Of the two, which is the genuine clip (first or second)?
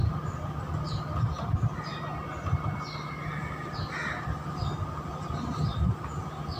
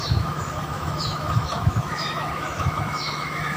first